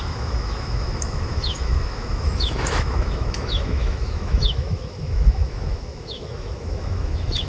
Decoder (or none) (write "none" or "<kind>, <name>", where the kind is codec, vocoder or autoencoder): autoencoder, DAC-VAE